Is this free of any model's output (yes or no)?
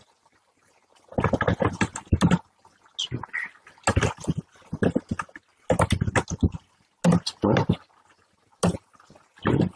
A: yes